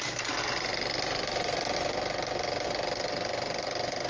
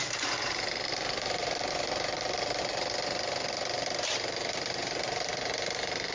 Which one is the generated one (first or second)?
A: second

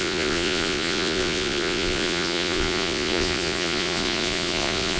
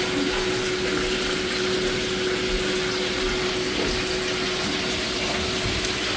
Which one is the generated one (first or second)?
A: first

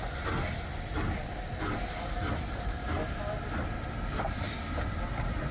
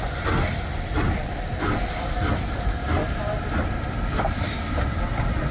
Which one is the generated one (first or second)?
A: second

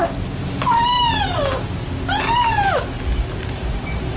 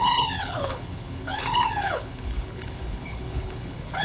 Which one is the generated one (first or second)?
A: second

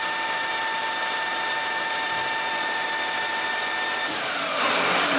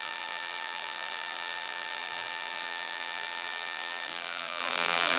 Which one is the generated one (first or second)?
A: second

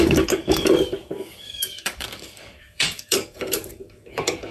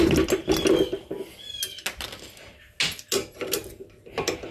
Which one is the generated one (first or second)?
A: first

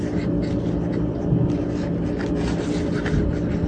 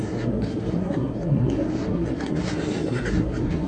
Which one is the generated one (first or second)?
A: second